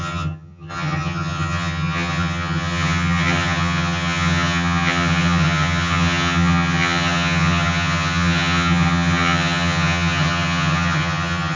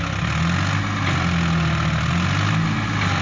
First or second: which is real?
second